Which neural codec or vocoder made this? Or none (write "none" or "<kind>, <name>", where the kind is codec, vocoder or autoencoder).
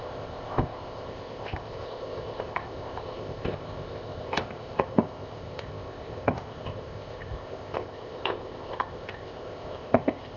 codec, ZipCodec